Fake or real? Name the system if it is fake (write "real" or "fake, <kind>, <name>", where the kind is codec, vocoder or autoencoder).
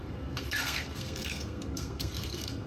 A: fake, codec, SNAC